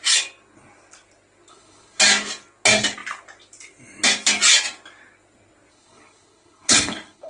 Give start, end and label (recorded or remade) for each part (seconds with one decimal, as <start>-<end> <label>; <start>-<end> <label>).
0.0-1.5 recorded; 1.5-2.0 remade; 2.0-5.7 recorded; 5.7-7.3 remade